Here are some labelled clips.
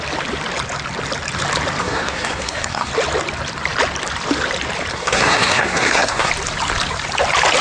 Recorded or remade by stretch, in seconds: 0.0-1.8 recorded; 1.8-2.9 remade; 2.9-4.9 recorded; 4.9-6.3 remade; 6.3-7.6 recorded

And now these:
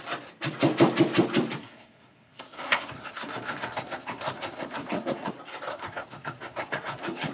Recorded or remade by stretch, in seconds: 0.0-1.6 recorded; 1.6-5.3 remade; 5.3-5.7 recorded; 5.7-7.3 remade

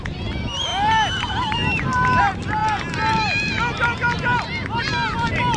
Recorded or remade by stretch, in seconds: 0.0-5.6 recorded

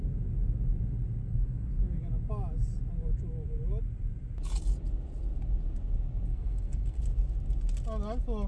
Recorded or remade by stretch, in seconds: 0.0-1.2 recorded; 1.2-1.7 remade; 1.7-6.3 recorded; 6.3-7.0 remade; 7.0-8.5 recorded

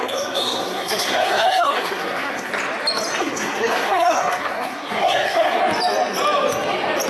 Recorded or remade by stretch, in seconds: 0.0-2.5 remade; 2.5-3.2 recorded; 3.2-5.6 remade; 5.6-7.1 recorded